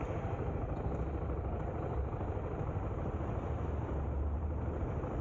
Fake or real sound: fake